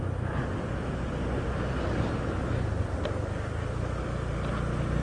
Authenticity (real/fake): real